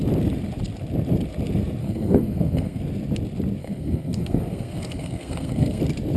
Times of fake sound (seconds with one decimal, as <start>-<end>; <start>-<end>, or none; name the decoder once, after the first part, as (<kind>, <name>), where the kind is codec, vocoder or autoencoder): 1.8-2.8 (codec, SNAC); 3.6-5.8